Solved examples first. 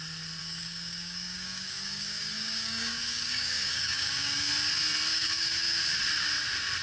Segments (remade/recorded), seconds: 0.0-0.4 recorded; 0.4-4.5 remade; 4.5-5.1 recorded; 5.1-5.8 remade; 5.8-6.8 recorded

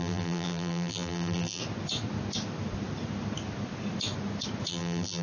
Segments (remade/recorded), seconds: 0.0-1.6 remade; 1.6-4.7 recorded; 4.7-5.2 remade

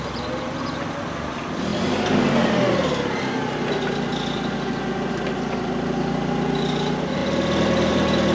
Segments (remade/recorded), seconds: 0.0-8.3 recorded

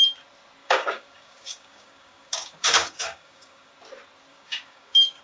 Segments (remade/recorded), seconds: 0.0-0.6 recorded; 0.6-3.7 remade; 3.7-4.3 recorded; 4.3-5.2 remade

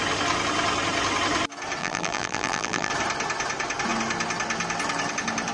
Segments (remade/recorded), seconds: 0.0-1.8 recorded; 1.8-2.9 remade; 2.9-5.5 recorded

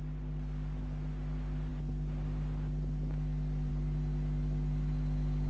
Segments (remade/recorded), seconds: 0.0-5.5 recorded

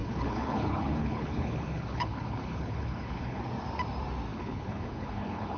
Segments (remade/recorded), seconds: 0.0-3.4 remade; 3.4-4.3 recorded; 4.3-5.6 remade